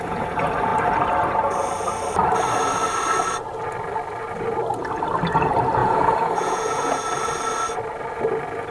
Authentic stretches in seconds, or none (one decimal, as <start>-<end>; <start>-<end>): 0.0-5.8; 7.0-8.7